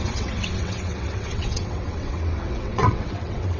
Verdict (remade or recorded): remade